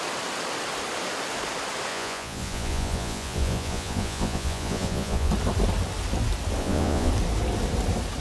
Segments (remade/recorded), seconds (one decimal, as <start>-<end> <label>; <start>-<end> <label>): 0.0-1.9 recorded; 1.9-5.3 remade; 5.3-6.6 recorded; 6.6-7.1 remade; 7.1-8.2 recorded

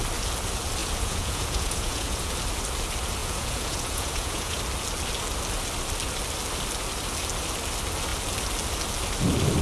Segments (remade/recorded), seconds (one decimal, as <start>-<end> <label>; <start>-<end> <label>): 0.0-0.8 recorded; 0.8-2.3 remade; 2.3-3.2 recorded; 3.2-4.6 remade; 4.6-9.6 recorded